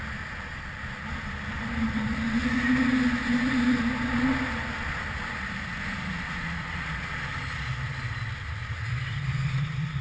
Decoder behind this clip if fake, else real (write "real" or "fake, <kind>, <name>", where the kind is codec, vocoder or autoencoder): real